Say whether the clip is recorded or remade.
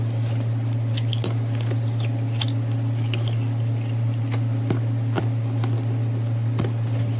recorded